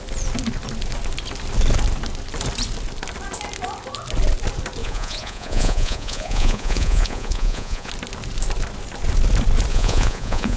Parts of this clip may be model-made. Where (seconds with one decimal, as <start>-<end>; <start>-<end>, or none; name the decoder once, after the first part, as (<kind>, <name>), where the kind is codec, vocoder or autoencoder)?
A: 4.8-7.9 (vocoder, Vocos); 9.7-10.6